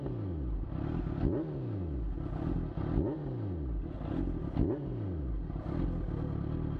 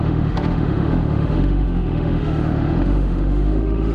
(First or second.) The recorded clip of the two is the first